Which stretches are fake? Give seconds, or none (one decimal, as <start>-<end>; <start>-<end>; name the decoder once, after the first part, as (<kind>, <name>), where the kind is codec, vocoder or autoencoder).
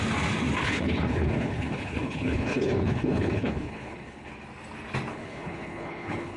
0.6-4.3 (codec, HILCodec); 5.1-6.4